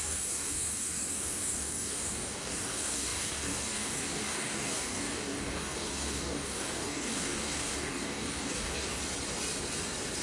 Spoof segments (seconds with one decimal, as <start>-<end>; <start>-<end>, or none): 0.0-9.0